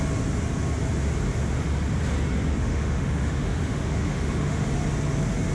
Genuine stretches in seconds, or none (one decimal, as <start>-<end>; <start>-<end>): 0.0-2.6; 4.7-5.5

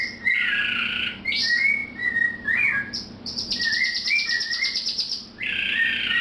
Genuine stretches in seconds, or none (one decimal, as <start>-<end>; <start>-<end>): 0.0-6.2

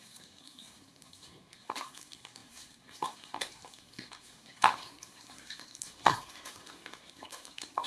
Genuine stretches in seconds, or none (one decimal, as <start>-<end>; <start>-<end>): none

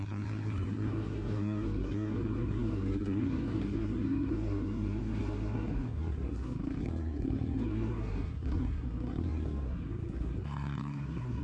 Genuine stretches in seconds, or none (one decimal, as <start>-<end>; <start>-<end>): none

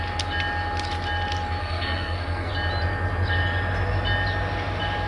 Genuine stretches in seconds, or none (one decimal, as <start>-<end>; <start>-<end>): 0.0-1.6; 2.5-5.1

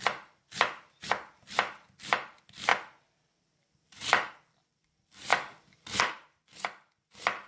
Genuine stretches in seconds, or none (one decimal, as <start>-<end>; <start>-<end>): 5.3-6.0

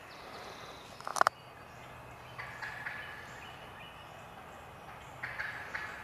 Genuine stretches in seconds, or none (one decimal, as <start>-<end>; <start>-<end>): 0.0-6.0

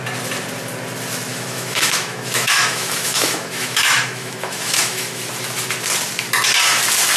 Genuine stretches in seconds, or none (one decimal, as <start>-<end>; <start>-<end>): 0.0-1.3; 5.2-7.2